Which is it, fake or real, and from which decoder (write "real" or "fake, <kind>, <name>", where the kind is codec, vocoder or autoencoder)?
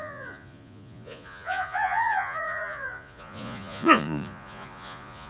fake, vocoder, Vocos